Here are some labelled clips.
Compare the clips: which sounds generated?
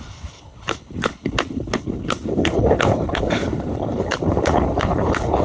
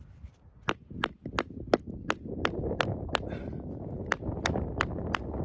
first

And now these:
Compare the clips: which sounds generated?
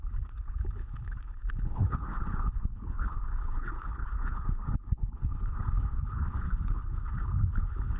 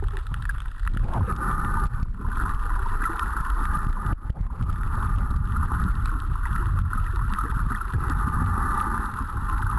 first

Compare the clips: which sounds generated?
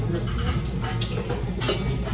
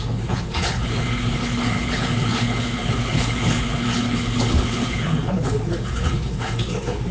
second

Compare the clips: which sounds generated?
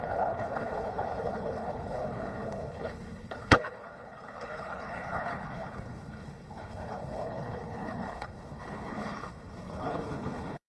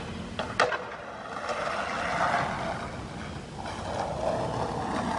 first